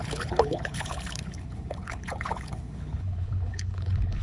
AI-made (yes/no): yes